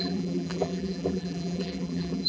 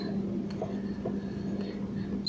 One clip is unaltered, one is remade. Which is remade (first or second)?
first